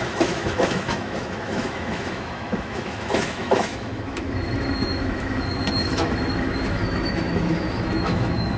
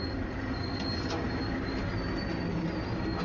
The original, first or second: second